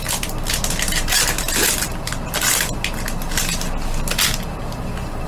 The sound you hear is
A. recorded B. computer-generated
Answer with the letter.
A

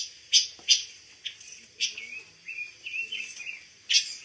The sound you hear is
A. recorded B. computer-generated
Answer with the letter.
A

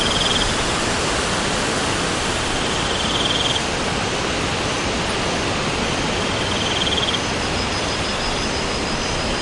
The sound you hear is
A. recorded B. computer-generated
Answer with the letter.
A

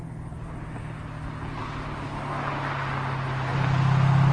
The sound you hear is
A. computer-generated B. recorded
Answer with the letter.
B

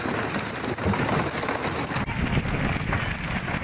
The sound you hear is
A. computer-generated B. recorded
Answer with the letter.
B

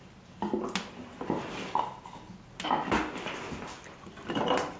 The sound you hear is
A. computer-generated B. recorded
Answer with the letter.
B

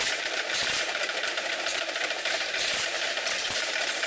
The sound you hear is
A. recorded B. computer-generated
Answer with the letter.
B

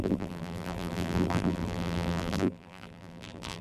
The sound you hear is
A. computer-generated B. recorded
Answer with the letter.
A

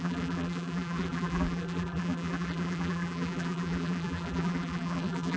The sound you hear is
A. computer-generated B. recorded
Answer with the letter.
A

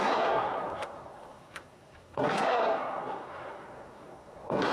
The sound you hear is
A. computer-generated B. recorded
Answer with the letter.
A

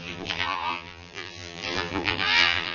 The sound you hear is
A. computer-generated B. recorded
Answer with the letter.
A